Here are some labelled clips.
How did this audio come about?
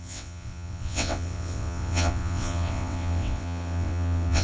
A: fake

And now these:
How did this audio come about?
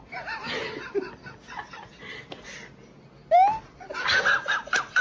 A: real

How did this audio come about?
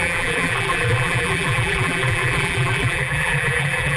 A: fake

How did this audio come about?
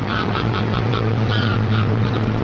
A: fake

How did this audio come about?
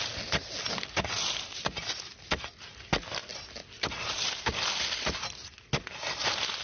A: real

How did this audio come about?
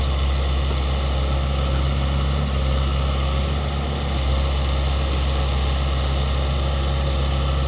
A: real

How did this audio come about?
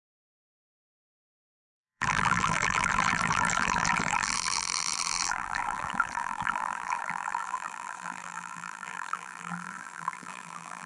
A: fake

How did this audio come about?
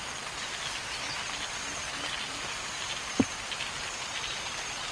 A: real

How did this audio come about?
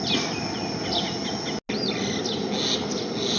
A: real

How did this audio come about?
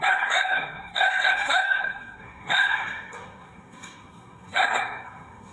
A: fake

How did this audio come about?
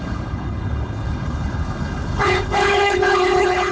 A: fake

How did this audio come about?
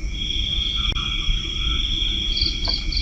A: real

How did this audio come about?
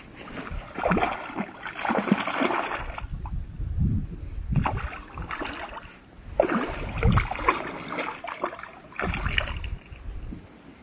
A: real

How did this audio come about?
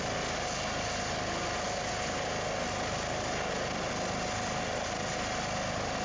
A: real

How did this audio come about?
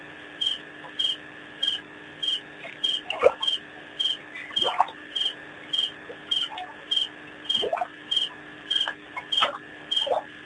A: real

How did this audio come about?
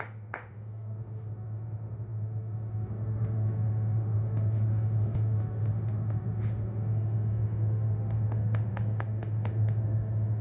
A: fake